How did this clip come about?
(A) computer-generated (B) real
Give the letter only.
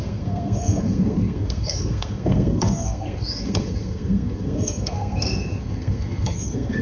A